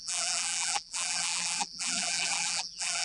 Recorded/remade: remade